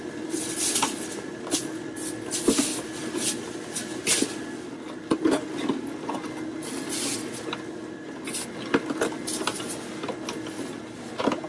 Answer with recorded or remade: recorded